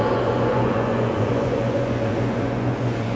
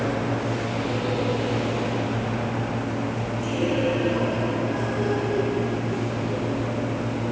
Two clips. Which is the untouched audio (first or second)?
second